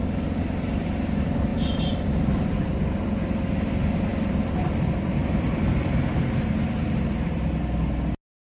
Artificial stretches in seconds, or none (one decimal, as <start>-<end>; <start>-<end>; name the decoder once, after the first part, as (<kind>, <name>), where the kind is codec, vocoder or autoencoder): none